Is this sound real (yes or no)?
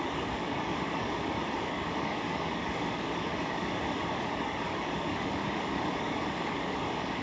no